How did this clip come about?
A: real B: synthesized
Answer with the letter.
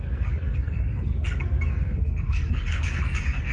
B